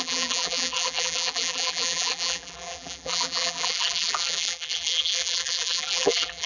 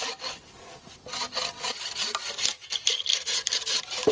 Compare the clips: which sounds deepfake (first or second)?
first